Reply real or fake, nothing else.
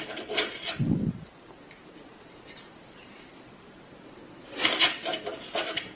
fake